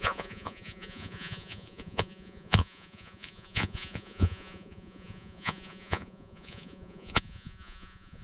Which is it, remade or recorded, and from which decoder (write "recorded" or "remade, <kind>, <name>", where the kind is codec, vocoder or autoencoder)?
remade, vocoder, Vocos